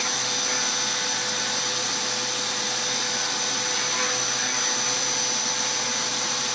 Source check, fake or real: real